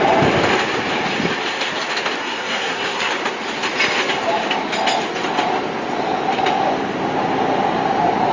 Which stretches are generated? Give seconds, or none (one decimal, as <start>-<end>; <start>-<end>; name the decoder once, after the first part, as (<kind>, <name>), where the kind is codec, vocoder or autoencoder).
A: 2.2-3.1 (codec, SNAC)